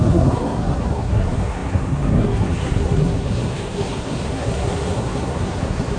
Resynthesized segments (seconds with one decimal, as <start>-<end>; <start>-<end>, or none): 0.0-6.0